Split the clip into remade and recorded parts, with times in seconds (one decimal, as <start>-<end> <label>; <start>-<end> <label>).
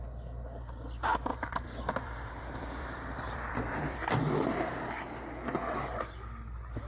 0.0-1.3 recorded; 1.3-4.1 remade; 4.1-6.9 recorded